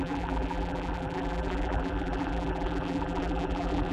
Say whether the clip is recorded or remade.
remade